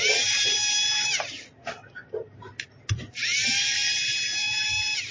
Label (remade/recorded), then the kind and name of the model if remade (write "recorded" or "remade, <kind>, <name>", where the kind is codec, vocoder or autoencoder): recorded